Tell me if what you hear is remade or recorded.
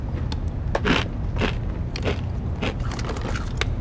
recorded